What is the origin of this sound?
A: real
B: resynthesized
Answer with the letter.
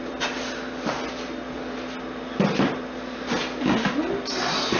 A